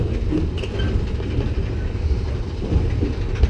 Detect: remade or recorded recorded